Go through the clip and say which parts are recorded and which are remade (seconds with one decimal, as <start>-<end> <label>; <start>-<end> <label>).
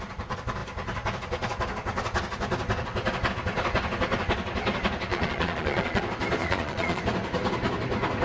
0.0-5.1 recorded; 5.1-6.0 remade; 6.0-6.4 recorded; 6.4-7.0 remade; 7.0-8.2 recorded